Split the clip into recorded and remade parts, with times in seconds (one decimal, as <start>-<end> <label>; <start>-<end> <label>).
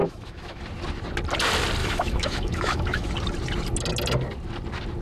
0.0-0.6 remade; 0.6-1.8 recorded; 1.8-3.1 remade; 3.1-5.0 recorded